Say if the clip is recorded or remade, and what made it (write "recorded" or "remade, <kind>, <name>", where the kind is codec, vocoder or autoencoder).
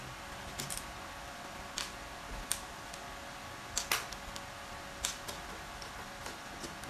recorded